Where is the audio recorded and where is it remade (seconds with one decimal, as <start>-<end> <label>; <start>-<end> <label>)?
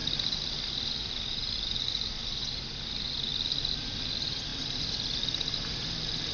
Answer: 0.0-1.2 remade; 1.2-6.3 recorded